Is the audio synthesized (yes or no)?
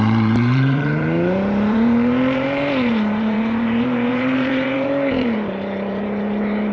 yes